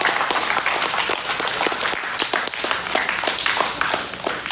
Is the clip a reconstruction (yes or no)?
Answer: no